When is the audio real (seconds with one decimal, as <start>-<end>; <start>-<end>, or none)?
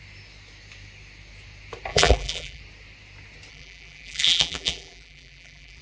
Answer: 0.0-1.9; 2.6-3.5